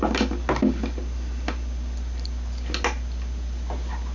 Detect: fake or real real